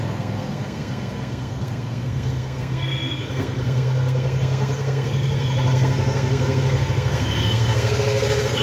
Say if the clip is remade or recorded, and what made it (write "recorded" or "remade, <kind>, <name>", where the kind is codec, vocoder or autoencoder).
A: remade, codec, SNAC